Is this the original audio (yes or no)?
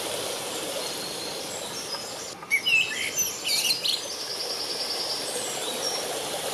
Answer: yes